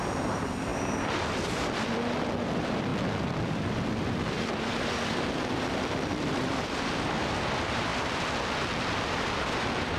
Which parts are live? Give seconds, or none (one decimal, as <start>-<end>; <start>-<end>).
7.9-9.1